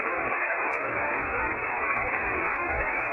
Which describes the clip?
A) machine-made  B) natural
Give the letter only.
A